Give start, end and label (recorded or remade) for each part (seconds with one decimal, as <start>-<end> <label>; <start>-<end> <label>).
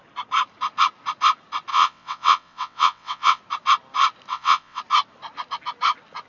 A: 0.0-1.7 recorded; 1.7-3.4 remade; 3.4-4.3 recorded; 4.3-4.8 remade; 4.8-6.3 recorded